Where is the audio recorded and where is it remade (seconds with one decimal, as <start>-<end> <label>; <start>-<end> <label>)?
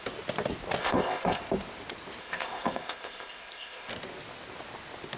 0.0-0.8 recorded; 0.8-1.4 remade; 1.4-2.2 recorded; 2.2-3.9 remade; 3.9-5.2 recorded